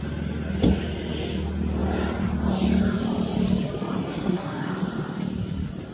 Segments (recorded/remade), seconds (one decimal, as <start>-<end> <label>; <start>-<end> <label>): 0.0-4.1 recorded; 4.1-4.7 remade; 4.7-5.9 recorded